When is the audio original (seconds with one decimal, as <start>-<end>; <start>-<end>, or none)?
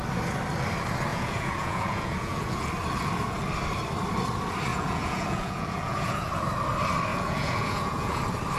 0.0-1.1; 2.7-4.7; 6.3-7.1; 8.2-8.6